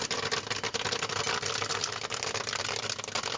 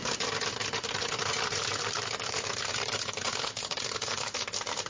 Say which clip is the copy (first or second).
second